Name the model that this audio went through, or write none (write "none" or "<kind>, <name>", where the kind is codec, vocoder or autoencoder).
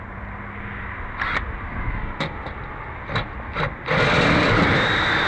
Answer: vocoder, BigVGAN v2